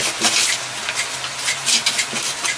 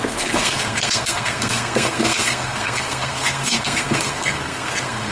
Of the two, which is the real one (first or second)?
first